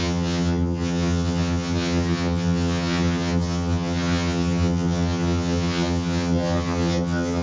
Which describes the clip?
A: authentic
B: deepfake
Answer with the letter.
B